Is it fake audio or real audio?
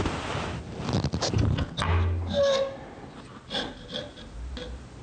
real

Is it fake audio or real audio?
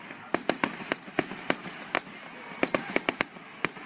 real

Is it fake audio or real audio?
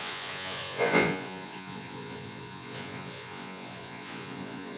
fake